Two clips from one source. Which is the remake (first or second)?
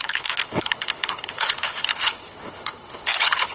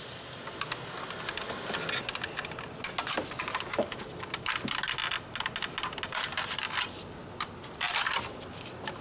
first